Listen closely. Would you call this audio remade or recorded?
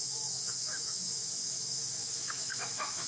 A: remade